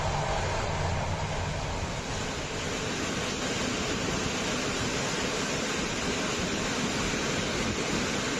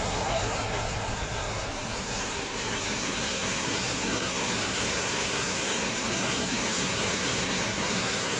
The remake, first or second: second